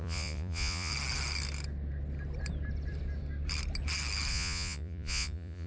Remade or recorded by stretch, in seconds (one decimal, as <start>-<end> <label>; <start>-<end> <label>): 0.0-0.9 remade; 0.9-4.3 recorded; 4.3-5.7 remade

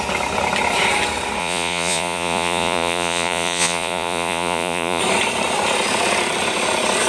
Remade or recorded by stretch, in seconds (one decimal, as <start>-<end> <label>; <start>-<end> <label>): 0.0-1.4 recorded; 1.4-5.0 remade; 5.0-7.1 recorded

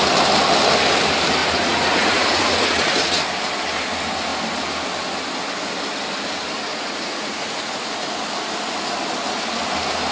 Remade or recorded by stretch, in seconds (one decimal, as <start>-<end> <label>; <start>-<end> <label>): 0.0-1.4 recorded; 1.4-3.2 remade; 3.2-6.7 recorded; 6.7-8.1 remade; 8.1-10.1 recorded